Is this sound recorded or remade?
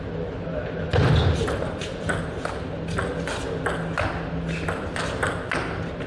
recorded